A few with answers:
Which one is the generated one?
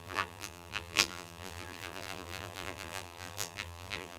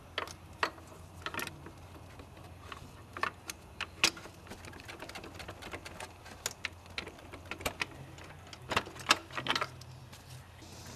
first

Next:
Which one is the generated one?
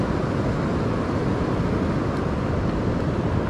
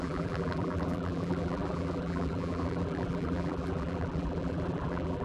second